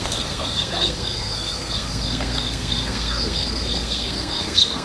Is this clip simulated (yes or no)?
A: yes